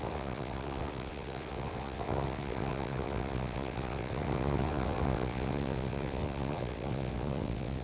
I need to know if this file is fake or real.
fake